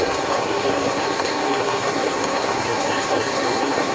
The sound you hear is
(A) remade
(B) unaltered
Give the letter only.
A